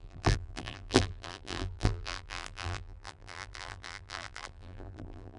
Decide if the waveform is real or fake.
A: fake